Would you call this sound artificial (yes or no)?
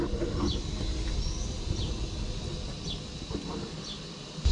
no